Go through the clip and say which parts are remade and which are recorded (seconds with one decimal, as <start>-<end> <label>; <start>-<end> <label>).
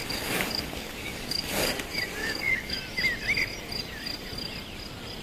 0.0-1.7 remade; 1.7-2.2 recorded; 2.2-2.8 remade; 2.8-5.2 recorded